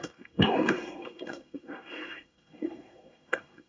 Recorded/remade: remade